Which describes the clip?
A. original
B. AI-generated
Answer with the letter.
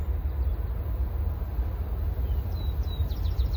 A